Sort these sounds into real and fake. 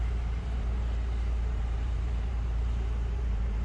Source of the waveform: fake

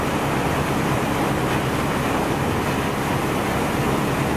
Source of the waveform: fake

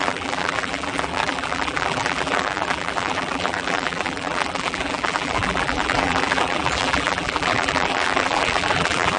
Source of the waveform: fake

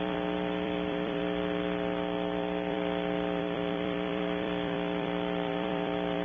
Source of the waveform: fake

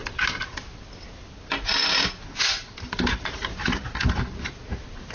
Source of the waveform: real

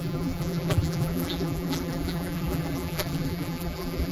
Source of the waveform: fake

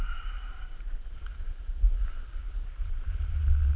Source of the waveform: fake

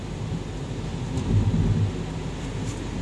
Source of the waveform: real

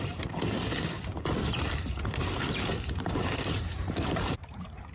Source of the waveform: fake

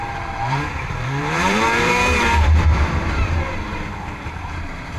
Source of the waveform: fake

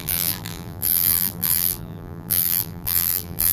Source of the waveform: fake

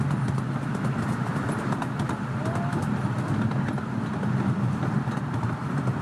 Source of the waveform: real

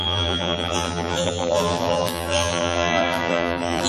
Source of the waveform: fake